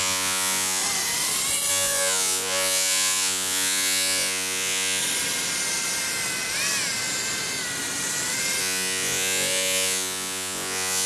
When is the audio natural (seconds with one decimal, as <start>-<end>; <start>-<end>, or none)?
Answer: 0.8-1.7; 5.0-8.6